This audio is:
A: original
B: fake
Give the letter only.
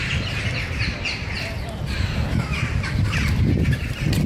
A